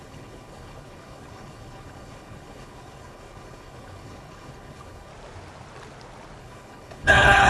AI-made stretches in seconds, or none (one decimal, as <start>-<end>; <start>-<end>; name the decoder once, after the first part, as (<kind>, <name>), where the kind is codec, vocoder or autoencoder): 0.0-5.1 (codec, HILCodec); 6.4-7.5